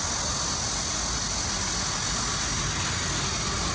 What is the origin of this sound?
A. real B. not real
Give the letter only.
A